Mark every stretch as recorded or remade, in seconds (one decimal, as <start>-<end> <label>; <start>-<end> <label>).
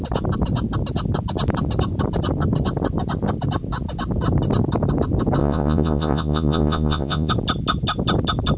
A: 0.0-5.4 recorded; 5.4-7.3 remade; 7.3-8.6 recorded